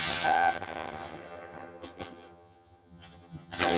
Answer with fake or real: fake